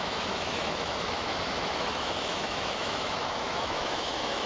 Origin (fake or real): fake